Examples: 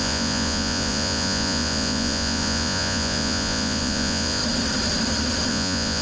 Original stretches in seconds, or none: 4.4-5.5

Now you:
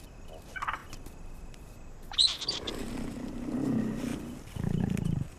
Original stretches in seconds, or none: 0.0-5.4

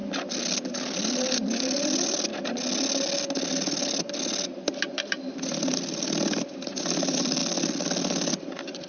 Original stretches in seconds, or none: 0.0-0.7; 2.3-4.8; 7.4-8.0

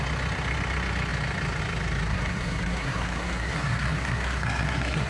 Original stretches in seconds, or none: 0.0-2.1

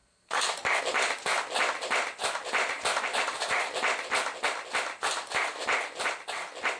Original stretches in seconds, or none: 0.8-2.2; 3.7-6.8

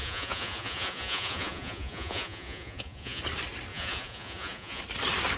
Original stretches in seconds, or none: 3.2-3.7; 4.8-5.4

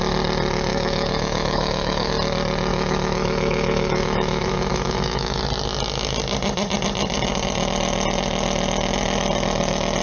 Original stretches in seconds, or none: 0.0-0.7; 2.1-2.7; 5.4-10.0

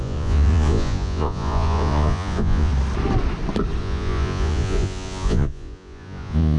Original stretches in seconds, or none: 2.7-3.8